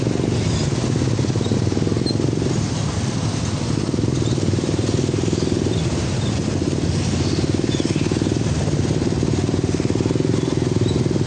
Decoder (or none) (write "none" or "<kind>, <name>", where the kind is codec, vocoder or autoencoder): none